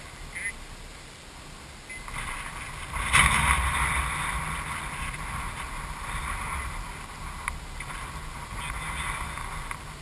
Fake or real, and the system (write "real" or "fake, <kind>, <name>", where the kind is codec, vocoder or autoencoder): real